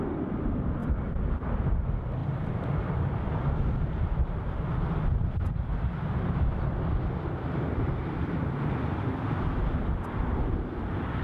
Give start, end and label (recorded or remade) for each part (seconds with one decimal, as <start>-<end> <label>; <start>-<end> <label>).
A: 0.0-2.2 recorded; 2.2-6.9 remade; 6.9-7.7 recorded; 7.7-8.4 remade; 8.4-11.2 recorded